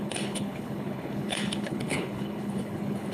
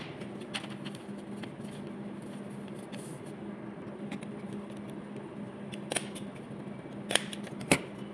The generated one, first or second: first